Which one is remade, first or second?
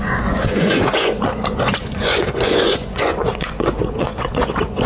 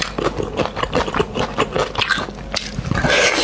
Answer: first